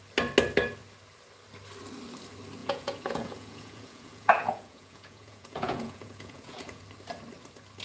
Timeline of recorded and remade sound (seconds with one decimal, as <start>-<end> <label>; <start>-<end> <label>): 0.0-2.6 recorded; 2.6-6.8 remade; 6.8-7.8 recorded